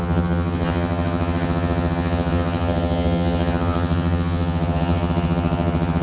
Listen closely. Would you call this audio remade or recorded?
remade